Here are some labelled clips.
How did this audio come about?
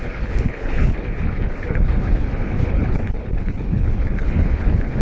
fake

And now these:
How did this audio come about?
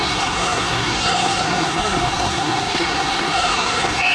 fake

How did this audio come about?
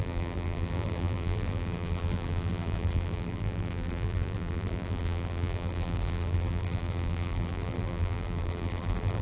fake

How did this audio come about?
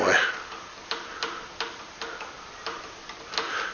real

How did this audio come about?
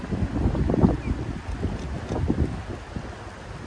real